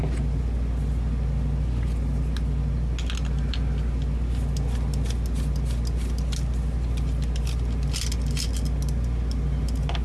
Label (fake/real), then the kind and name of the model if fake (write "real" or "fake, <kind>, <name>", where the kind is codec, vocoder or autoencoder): real